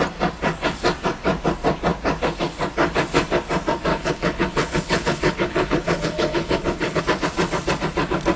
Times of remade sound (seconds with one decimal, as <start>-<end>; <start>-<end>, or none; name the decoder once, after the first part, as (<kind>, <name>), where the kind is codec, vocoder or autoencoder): 3.9-7.0 (codec, HILCodec)